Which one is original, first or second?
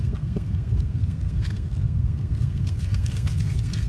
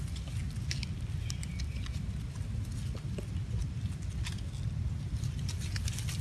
second